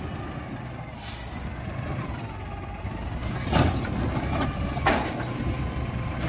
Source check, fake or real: real